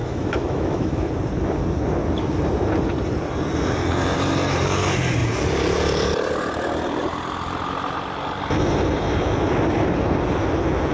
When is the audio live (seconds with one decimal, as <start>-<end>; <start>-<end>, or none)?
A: 1.1-10.9